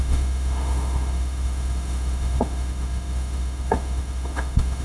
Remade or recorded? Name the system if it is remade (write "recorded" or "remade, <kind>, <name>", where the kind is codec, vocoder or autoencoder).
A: remade, autoencoder, DAC-VAE